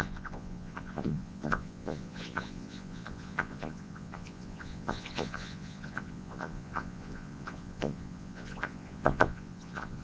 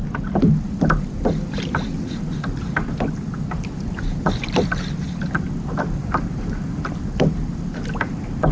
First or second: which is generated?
first